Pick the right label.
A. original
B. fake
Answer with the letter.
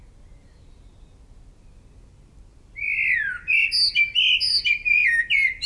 A